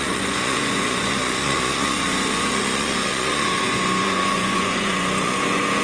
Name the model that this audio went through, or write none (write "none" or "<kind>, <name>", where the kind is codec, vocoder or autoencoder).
vocoder, Vocos